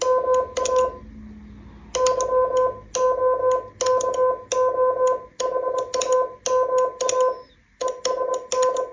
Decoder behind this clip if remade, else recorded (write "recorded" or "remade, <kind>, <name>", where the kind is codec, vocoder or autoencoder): recorded